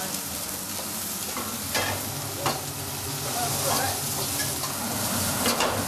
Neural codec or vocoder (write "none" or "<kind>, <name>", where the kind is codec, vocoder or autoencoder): none